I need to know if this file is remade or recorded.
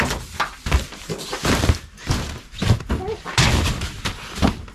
recorded